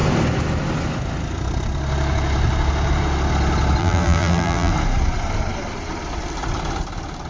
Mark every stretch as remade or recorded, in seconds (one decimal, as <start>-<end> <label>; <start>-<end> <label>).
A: 0.0-3.8 recorded; 3.8-4.7 remade; 4.7-7.3 recorded